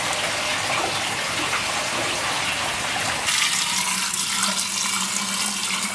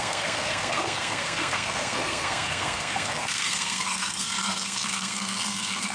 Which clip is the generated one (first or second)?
second